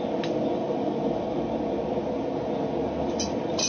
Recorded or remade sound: recorded